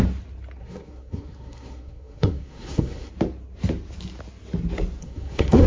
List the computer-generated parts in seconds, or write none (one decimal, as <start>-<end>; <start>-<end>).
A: 0.6-3.1; 5.0-5.7